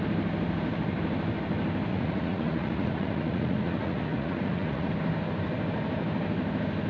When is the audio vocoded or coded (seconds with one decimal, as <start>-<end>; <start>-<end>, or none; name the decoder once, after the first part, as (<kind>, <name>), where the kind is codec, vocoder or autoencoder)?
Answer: 1.9-4.9 (vocoder, Vocos)